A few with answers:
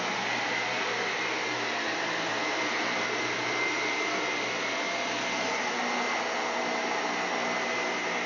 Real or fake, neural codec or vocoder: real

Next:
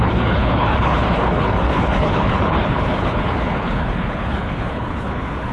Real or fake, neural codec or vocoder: fake, codec, HILCodec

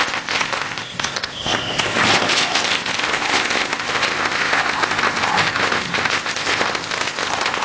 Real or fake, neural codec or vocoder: fake, codec, ZipCodec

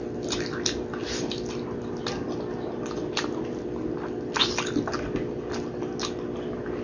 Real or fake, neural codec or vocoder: real